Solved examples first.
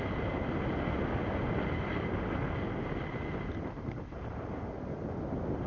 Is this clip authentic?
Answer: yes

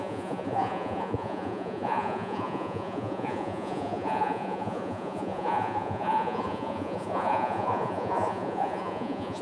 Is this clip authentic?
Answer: no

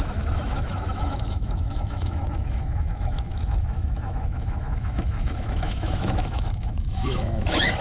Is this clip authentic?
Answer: no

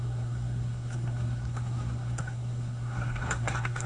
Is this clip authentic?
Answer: no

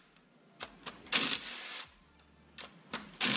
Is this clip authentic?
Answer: yes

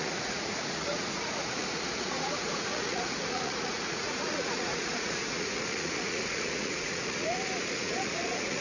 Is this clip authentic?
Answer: no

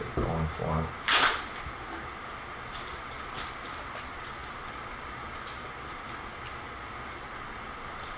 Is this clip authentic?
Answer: yes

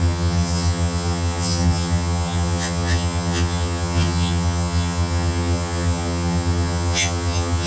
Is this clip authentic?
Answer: no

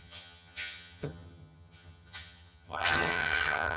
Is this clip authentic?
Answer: no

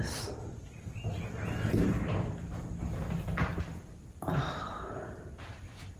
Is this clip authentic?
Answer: yes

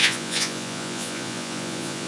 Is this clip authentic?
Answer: no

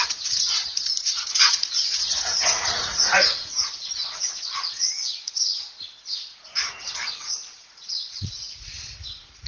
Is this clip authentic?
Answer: no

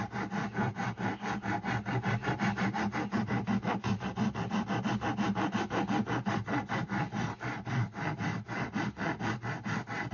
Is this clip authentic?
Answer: yes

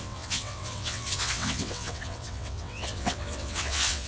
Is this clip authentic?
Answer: no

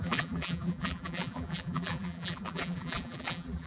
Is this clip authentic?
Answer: no